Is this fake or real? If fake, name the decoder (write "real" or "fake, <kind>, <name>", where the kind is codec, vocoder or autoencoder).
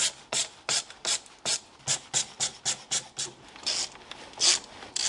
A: real